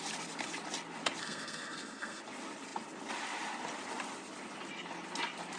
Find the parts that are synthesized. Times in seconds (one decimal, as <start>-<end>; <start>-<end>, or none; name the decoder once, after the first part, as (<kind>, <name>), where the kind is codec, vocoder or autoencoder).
1.2-2.2 (codec, SNAC)